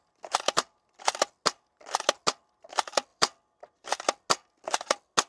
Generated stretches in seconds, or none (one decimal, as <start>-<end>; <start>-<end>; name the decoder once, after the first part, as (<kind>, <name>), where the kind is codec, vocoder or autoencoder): 3.1-3.7 (vocoder, BigVGAN v2)